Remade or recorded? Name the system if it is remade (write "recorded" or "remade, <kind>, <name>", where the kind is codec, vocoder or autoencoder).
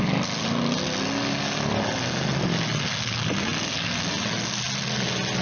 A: recorded